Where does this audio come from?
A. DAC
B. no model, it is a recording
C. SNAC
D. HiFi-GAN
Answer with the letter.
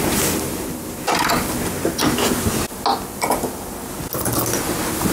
B